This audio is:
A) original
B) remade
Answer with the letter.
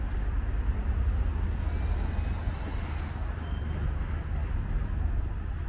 A